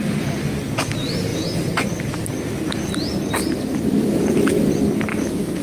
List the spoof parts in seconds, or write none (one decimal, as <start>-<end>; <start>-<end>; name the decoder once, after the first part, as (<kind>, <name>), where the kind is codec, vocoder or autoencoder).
5.1-5.6 (autoencoder, DAC-VAE)

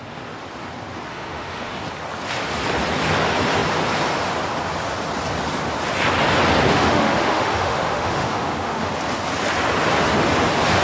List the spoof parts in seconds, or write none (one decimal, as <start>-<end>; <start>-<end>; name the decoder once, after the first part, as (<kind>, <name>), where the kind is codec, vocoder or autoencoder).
1.1-1.7 (autoencoder, DAC-VAE); 6.7-8.9